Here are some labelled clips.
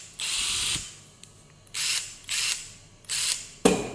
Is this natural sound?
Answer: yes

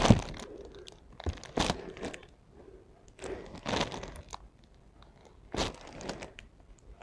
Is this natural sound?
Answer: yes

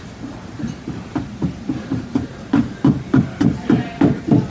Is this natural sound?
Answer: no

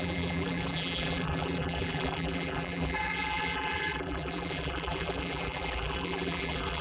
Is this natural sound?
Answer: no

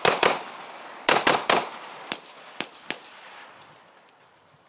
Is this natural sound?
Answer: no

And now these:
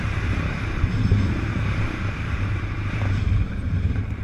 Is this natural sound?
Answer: no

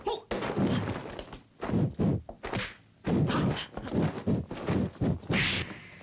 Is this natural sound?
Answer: yes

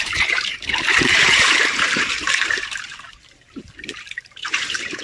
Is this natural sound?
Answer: no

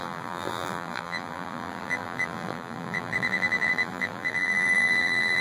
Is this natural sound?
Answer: no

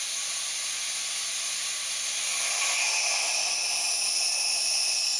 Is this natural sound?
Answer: yes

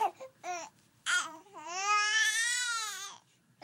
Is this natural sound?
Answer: no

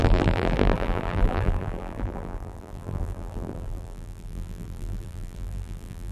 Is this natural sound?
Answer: no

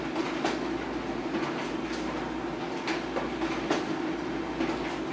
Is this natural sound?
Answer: yes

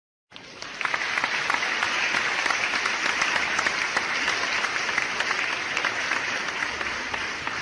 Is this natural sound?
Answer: yes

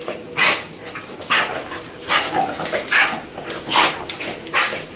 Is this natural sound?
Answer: yes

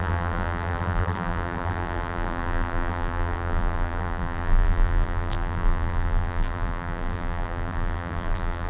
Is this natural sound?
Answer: no